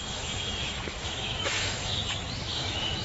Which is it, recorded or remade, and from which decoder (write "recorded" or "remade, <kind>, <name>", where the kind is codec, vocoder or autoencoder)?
remade, autoencoder, DAC-VAE